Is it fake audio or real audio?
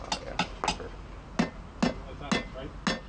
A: real